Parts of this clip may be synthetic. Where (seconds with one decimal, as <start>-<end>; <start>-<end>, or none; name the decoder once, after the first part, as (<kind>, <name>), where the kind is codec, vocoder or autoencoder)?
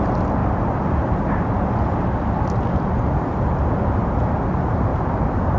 none